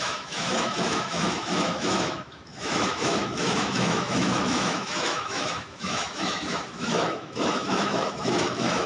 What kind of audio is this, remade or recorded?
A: remade